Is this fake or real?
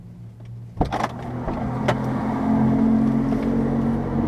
real